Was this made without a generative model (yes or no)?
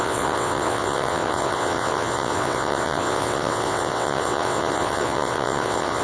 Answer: no